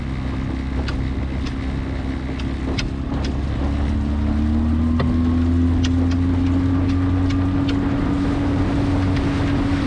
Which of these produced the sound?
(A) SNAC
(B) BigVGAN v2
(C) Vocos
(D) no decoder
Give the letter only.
D